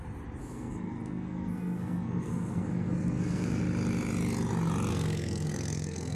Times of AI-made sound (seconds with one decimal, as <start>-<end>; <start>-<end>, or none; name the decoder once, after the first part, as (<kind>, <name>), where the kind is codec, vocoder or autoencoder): 0.4-3.6 (codec, SNAC); 4.9-6.2